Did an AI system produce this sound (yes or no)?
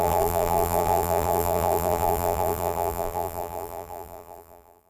yes